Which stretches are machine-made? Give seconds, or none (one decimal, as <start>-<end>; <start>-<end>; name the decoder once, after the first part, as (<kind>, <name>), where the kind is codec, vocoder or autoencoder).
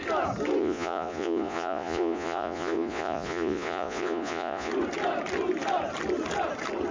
0.6-4.7 (vocoder, Vocos)